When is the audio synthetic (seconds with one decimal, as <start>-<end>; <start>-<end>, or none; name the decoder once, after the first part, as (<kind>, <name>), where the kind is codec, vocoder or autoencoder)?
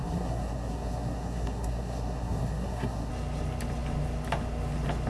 0.0-3.1 (codec, SNAC)